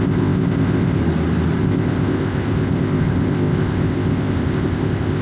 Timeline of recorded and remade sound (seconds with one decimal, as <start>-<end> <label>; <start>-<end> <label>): 0.0-1.0 remade; 1.0-1.6 recorded; 1.6-5.2 remade